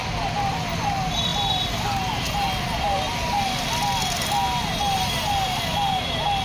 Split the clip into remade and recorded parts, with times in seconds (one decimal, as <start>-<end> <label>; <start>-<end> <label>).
0.0-6.4 recorded